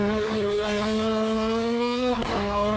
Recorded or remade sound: remade